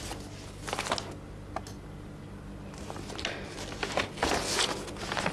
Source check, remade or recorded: recorded